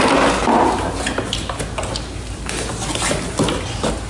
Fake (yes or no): no